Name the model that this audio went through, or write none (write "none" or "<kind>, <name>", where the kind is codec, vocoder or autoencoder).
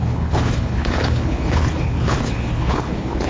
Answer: codec, HILCodec